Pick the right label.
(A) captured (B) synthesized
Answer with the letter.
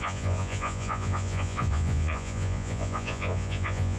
B